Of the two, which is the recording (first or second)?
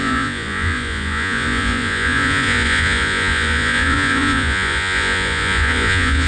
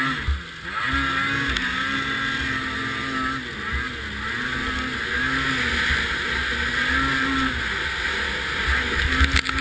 second